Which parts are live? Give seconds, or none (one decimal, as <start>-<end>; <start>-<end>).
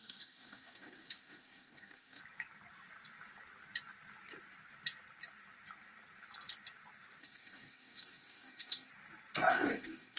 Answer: 2.2-7.2; 8.9-9.5